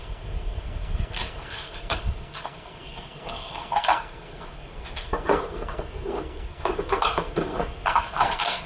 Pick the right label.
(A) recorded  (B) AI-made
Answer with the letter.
B